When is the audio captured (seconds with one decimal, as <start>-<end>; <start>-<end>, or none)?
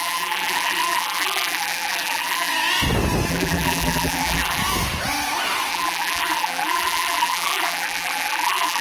2.5-3.3; 4.6-5.7